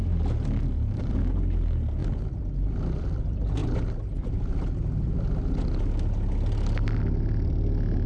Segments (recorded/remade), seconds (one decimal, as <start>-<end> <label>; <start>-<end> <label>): 0.0-8.1 recorded